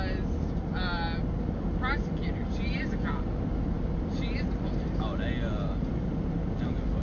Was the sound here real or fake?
real